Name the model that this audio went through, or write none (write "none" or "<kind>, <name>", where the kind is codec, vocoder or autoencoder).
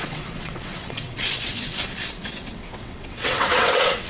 vocoder, WaveNeXt